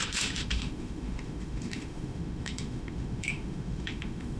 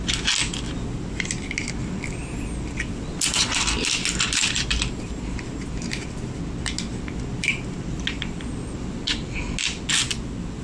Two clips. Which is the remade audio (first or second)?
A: first